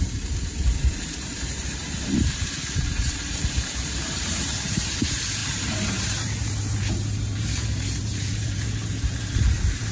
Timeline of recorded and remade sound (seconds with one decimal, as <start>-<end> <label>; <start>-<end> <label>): 0.0-9.9 remade